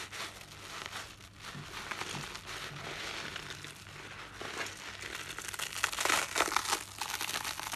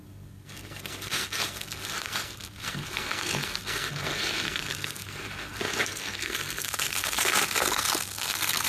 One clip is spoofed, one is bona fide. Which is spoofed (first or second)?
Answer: second